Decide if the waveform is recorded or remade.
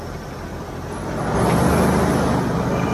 recorded